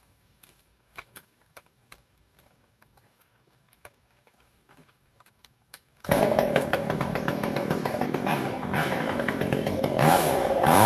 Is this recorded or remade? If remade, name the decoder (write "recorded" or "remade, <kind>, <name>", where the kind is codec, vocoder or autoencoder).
remade, codec, DAC